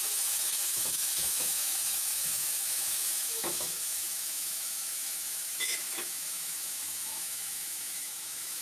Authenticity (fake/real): fake